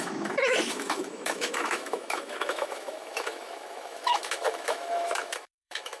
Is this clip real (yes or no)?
no